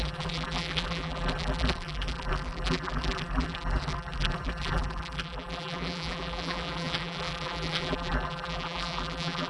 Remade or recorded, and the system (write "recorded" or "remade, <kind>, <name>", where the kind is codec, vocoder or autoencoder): remade, vocoder, BigVGAN v2